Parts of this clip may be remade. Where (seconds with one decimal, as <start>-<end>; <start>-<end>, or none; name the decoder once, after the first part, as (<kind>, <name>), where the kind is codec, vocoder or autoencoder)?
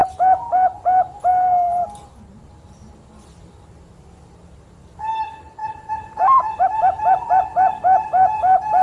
1.3-2.9 (vocoder, BigVGAN v2); 5.6-6.4